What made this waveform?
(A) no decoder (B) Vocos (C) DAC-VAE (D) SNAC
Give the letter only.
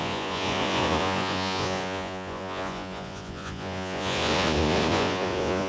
B